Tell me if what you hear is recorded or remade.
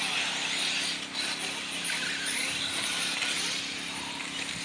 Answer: recorded